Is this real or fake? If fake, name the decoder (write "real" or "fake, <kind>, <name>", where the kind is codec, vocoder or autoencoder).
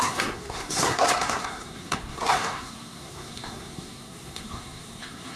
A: fake, codec, SNAC